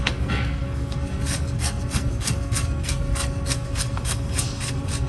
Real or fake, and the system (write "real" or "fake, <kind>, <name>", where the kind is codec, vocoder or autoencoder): fake, codec, SNAC